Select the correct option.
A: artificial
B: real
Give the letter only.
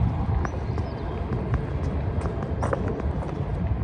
B